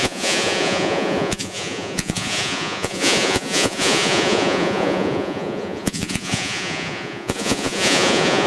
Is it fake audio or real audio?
fake